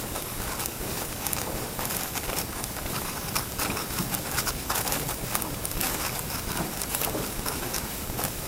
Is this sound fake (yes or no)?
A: yes